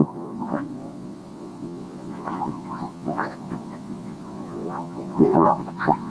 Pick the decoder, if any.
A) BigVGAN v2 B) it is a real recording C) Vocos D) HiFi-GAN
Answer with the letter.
C